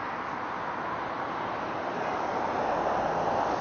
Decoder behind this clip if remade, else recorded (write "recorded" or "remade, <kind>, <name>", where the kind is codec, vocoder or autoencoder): recorded